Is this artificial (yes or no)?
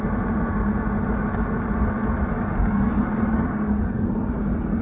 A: no